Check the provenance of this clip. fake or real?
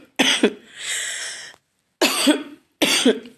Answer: real